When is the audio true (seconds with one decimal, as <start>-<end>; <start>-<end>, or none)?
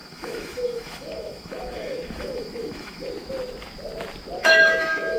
3.1-4.4